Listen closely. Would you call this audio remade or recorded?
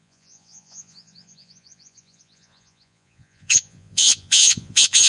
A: remade